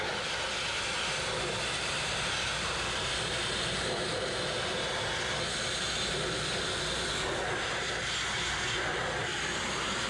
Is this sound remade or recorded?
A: recorded